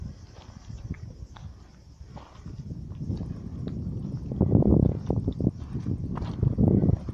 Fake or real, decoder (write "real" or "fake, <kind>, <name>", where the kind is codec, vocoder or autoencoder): real